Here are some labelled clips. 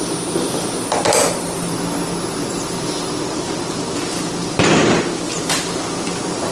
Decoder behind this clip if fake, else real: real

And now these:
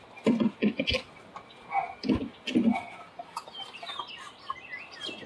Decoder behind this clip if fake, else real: real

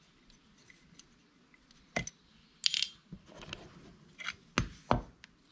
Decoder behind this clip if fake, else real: real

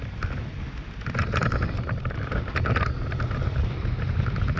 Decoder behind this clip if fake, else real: real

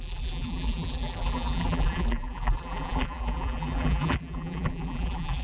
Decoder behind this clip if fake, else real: fake, vocoder, BigVGAN v2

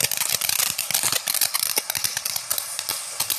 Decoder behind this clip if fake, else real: real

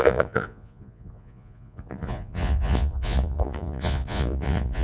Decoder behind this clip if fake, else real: fake, vocoder, Vocos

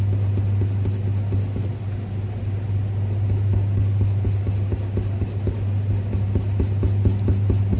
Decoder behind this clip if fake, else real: real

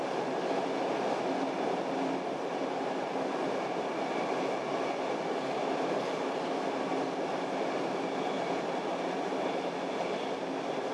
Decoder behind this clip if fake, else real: real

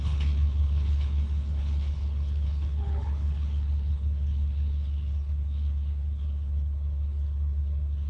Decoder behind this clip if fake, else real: fake, codec, HILCodec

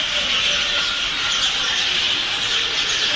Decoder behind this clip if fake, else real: real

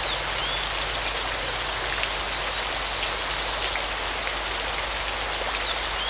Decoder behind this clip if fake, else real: real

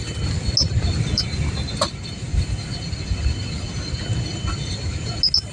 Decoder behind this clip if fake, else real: real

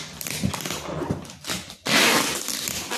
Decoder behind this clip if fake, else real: real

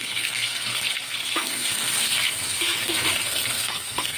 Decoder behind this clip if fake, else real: fake, codec, SNAC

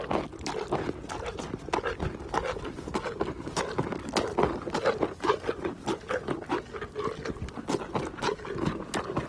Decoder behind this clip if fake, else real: real